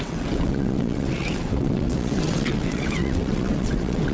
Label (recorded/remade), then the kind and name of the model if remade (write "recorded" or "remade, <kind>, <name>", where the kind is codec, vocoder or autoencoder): remade, vocoder, WaveNeXt